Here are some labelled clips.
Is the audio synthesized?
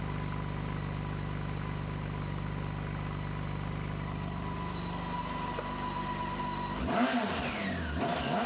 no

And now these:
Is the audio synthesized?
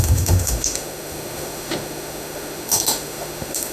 yes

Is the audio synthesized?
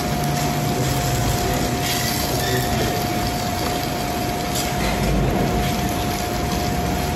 no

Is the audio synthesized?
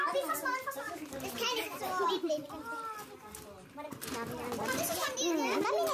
no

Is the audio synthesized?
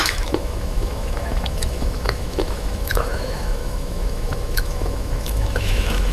yes